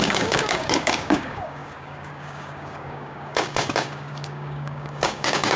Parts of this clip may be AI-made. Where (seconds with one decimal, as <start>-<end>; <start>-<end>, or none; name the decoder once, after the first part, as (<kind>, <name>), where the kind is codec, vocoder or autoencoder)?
0.0-5.6 (codec, DAC)